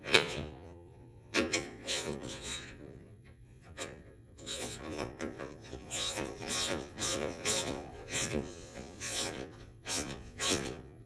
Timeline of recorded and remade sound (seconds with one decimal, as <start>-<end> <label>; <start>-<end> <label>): 0.0-11.1 remade